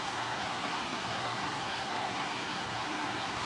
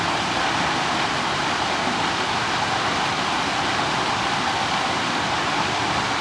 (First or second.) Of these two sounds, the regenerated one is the first